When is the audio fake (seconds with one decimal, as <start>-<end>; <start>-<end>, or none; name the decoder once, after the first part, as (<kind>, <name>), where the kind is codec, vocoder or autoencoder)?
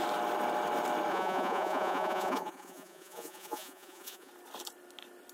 1.1-4.3 (vocoder, Vocos)